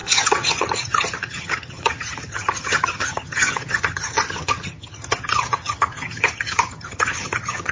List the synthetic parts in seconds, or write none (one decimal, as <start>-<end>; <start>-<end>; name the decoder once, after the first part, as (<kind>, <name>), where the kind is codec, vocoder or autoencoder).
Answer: 0.0-7.7 (vocoder, HiFi-GAN)

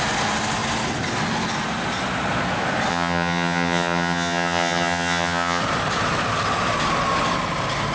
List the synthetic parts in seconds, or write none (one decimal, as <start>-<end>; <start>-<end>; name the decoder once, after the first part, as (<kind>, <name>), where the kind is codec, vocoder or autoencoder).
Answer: 2.9-5.6 (vocoder, HiFi-GAN)

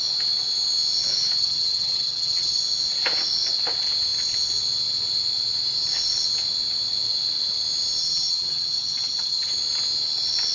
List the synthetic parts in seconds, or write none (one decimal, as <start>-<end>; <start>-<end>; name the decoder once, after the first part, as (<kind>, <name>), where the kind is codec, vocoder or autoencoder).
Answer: 1.4-2.6 (vocoder, HiFi-GAN); 8.0-9.5

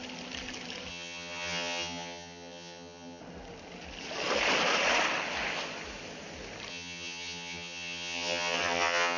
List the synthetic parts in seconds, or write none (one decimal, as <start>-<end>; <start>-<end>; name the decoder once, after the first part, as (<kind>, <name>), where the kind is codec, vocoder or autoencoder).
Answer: 0.9-3.2 (vocoder, HiFi-GAN); 6.7-9.2